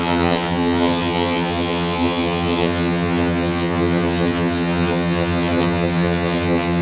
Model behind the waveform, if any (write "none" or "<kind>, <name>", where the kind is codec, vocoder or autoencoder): vocoder, HiFi-GAN